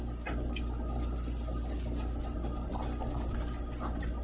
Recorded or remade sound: recorded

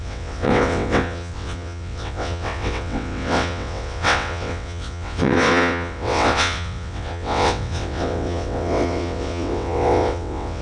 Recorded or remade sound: remade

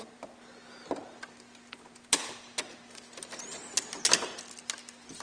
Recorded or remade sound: recorded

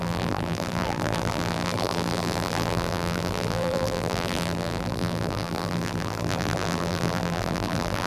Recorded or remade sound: remade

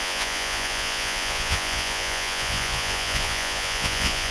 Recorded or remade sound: remade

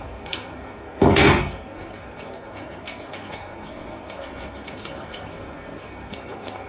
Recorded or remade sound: remade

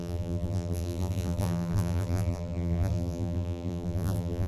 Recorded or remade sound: remade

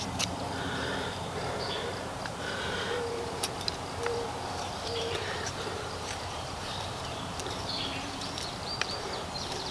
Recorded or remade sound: remade